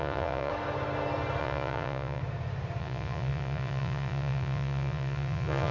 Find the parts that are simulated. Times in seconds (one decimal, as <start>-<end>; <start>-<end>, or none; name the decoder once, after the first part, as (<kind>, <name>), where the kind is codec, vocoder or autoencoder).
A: 0.0-0.5 (vocoder, Vocos); 1.4-2.2; 2.8-5.7